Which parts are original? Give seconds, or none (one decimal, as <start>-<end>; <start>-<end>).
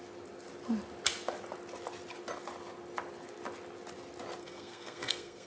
0.0-4.4